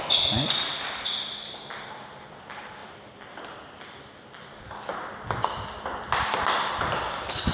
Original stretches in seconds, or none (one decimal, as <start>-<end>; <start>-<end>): 0.0-7.5